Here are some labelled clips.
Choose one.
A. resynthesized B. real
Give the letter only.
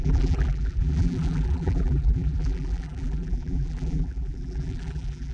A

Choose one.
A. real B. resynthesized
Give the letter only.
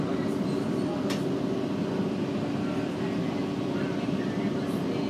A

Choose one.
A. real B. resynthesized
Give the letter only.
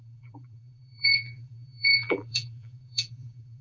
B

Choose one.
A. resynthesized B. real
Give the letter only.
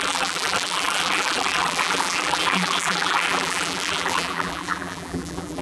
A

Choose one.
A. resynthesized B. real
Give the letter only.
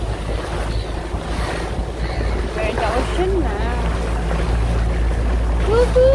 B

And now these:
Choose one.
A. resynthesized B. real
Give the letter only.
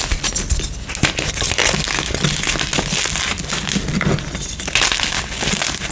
B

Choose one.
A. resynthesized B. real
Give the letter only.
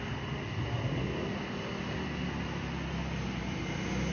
B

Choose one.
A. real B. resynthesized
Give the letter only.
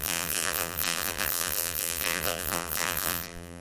B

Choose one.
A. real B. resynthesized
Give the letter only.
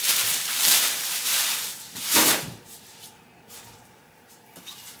B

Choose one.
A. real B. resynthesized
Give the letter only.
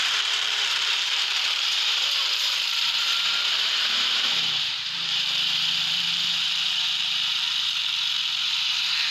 B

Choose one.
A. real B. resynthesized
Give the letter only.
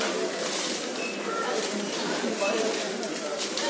B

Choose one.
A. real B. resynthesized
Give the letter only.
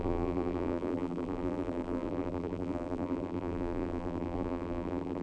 B